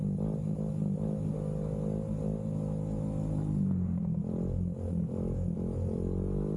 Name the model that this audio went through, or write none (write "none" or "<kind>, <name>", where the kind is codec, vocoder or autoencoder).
none